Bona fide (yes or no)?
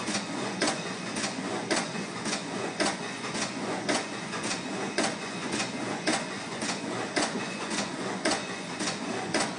no